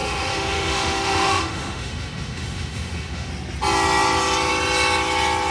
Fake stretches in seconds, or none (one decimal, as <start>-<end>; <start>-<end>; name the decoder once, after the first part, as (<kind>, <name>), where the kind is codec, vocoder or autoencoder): 0.0-3.3 (autoencoder, DAC-VAE)